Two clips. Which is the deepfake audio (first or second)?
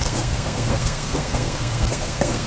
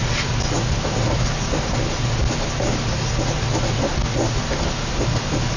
first